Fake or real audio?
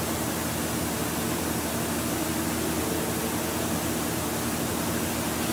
real